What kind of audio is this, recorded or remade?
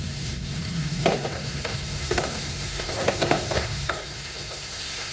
remade